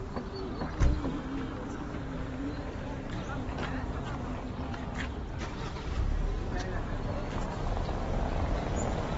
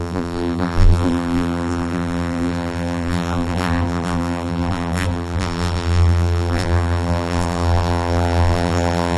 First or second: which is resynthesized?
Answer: second